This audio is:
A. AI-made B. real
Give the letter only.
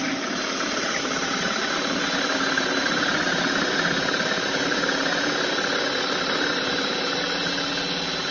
B